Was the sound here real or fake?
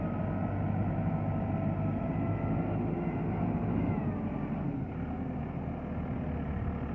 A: real